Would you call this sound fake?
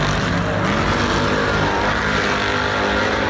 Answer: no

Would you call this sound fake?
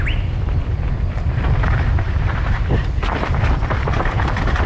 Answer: yes